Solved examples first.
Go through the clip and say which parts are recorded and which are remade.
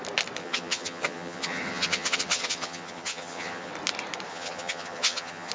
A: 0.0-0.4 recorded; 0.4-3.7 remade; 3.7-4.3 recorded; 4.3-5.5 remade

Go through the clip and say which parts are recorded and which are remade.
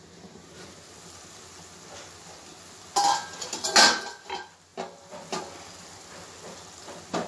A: 0.0-7.3 recorded